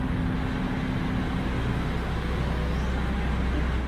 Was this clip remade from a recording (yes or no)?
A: no